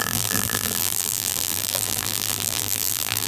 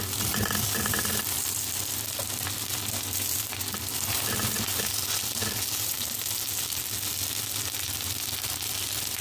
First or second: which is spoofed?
first